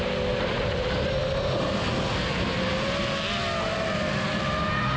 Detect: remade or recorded recorded